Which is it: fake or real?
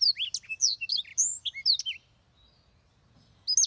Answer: real